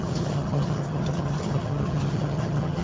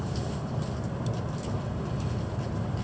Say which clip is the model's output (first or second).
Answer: first